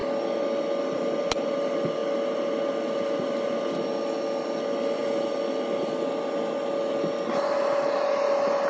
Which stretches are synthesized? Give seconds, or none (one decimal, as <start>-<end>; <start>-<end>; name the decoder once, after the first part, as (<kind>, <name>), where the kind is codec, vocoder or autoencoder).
none